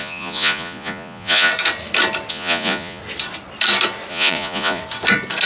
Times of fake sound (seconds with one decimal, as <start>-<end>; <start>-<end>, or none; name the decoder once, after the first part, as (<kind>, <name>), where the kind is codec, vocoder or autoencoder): 0.0-1.5 (vocoder, Vocos); 2.3-3.0; 4.1-4.8